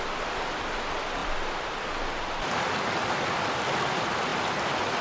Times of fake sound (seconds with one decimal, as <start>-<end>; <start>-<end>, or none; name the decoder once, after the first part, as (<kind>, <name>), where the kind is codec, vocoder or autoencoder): none